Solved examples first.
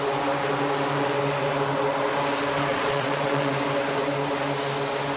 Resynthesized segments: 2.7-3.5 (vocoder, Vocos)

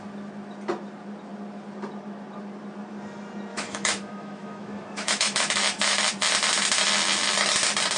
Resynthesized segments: 3.5-6.1 (autoencoder, DAC-VAE)

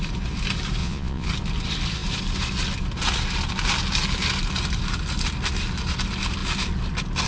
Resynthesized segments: 0.8-1.3 (vocoder, Vocos)